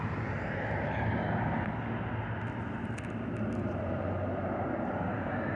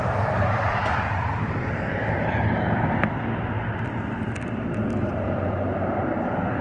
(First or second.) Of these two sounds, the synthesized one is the second